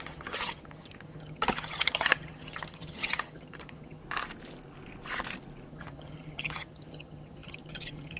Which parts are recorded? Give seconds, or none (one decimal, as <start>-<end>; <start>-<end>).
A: 4.0-5.7